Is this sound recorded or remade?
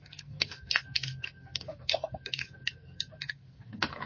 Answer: remade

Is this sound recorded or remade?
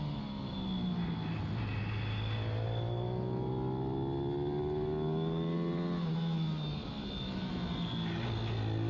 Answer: recorded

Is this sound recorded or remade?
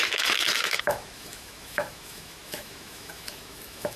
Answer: remade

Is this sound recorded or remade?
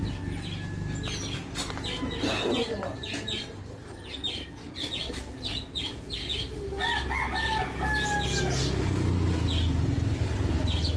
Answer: recorded